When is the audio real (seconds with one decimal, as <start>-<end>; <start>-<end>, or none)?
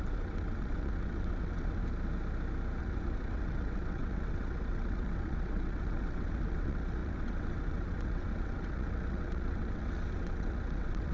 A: 1.8-2.8